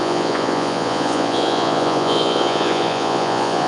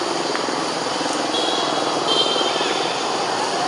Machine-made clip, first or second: first